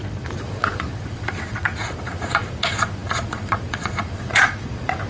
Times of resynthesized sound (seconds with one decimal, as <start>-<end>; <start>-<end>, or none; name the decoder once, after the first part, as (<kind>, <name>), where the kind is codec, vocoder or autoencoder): 0.0-5.1 (vocoder, Vocos)